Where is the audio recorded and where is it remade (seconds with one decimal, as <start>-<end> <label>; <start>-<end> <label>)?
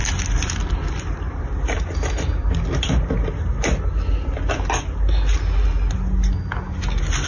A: 0.0-7.3 recorded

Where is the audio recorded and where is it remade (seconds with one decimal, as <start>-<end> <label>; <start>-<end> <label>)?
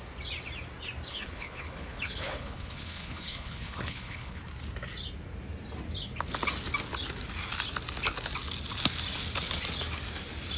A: 0.0-1.1 recorded; 1.1-4.4 remade; 4.4-10.6 recorded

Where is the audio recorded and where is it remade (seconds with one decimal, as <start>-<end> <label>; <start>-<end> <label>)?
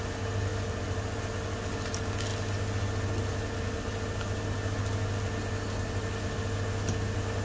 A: 0.0-7.4 recorded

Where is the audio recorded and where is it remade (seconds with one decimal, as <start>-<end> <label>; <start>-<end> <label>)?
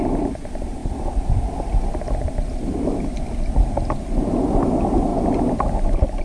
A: 0.0-6.2 recorded